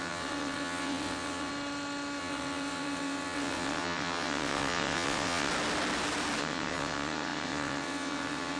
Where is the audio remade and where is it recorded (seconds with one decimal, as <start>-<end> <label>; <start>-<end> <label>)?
0.0-1.5 remade; 1.5-2.2 recorded; 2.2-5.5 remade; 5.5-6.4 recorded; 6.4-8.6 remade